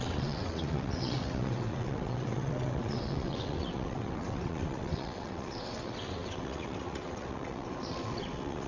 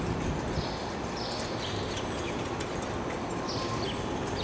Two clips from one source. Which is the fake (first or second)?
first